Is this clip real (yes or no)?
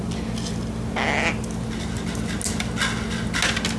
yes